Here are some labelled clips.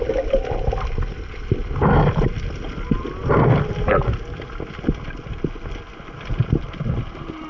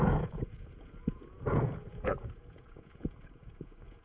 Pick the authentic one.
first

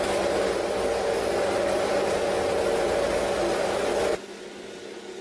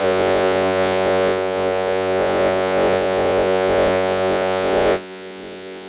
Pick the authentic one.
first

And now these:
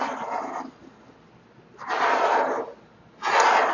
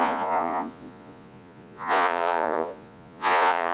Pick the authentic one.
first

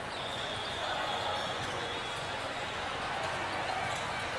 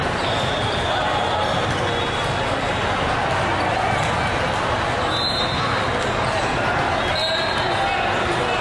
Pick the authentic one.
second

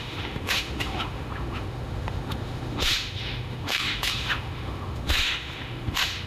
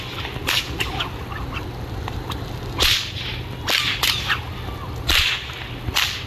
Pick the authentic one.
second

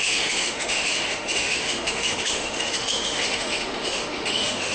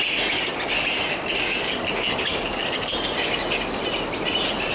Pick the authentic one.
second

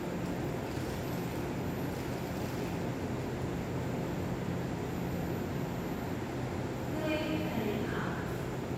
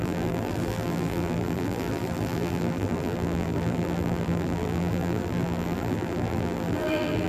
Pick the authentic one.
first